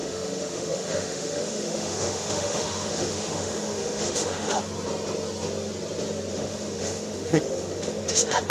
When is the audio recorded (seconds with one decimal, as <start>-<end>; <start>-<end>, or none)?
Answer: 4.6-6.3